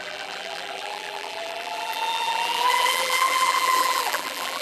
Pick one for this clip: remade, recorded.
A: remade